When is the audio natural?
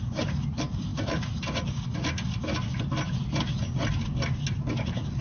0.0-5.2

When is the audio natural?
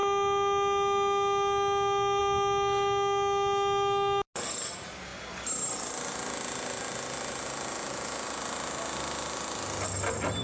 0.0-10.4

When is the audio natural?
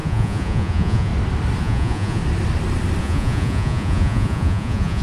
1.1-1.6; 2.2-3.0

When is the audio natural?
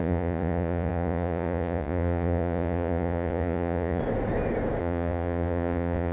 4.0-4.8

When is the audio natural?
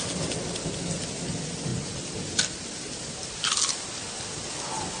0.0-5.0